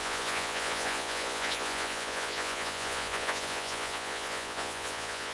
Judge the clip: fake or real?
fake